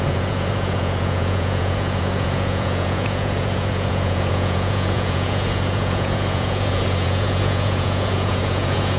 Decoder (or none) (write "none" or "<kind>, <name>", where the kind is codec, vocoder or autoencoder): vocoder, Vocos